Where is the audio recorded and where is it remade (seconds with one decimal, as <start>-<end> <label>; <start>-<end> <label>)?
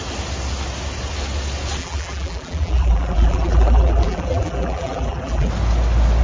0.0-1.8 recorded; 1.8-5.5 remade; 5.5-6.2 recorded